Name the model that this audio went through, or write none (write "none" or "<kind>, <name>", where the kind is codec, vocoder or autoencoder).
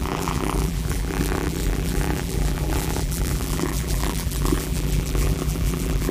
vocoder, BigVGAN v2